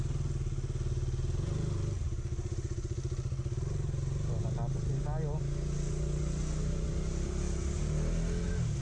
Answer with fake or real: real